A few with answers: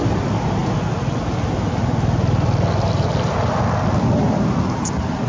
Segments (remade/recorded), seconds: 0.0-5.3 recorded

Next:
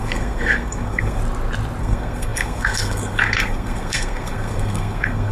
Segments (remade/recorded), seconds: 0.0-1.2 remade; 1.2-1.8 recorded; 1.8-5.3 remade

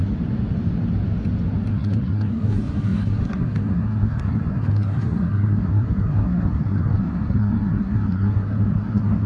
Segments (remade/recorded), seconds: 0.0-1.7 recorded; 1.7-9.3 remade

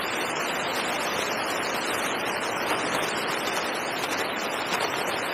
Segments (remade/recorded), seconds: 0.0-5.3 recorded

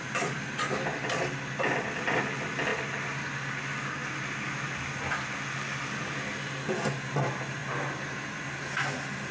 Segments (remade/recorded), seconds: 0.0-9.3 recorded

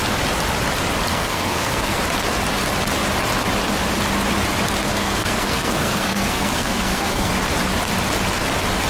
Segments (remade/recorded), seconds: 0.0-1.1 recorded; 1.1-2.0 remade; 2.0-4.9 recorded; 4.9-7.3 remade; 7.3-8.9 recorded